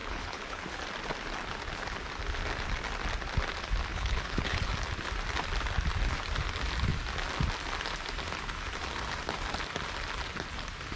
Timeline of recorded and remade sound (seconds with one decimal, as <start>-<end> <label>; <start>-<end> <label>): 0.0-0.6 remade; 0.6-3.9 recorded; 3.9-4.7 remade; 4.7-11.0 recorded